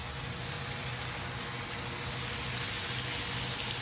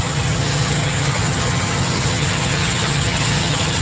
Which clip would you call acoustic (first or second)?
first